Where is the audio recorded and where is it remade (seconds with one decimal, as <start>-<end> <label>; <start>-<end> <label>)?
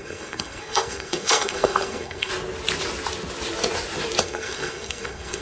0.0-2.3 remade; 2.3-4.2 recorded; 4.2-5.4 remade